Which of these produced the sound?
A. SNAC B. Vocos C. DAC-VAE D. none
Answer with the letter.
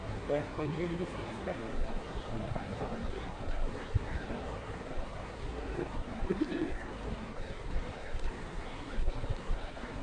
A